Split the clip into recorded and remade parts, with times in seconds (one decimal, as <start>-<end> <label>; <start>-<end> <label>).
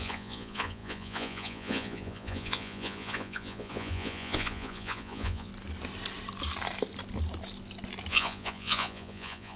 0.0-5.5 remade; 5.5-8.1 recorded; 8.1-9.6 remade